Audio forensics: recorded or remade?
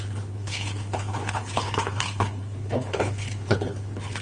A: remade